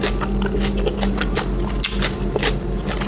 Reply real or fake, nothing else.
real